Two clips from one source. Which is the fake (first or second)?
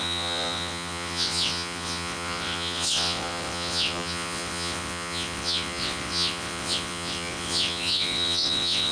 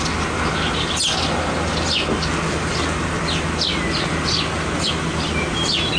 first